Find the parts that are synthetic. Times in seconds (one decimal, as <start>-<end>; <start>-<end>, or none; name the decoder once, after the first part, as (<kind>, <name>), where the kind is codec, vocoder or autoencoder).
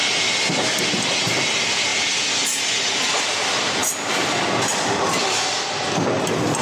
none